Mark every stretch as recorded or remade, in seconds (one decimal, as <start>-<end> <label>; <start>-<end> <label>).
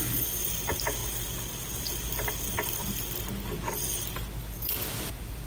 0.0-5.5 recorded